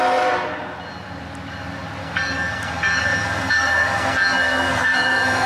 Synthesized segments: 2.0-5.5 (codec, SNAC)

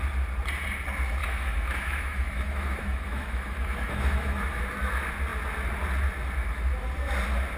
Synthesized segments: 1.2-4.6 (autoencoder, DAC-VAE)

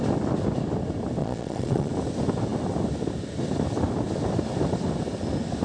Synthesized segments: 1.2-1.9 (vocoder, Vocos)

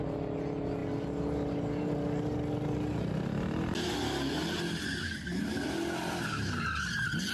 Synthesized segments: none

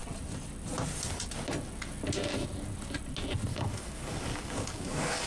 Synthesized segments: 3.5-5.3 (codec, DAC)

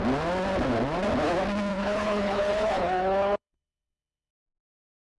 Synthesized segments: 1.7-4.3 (codec, HILCodec)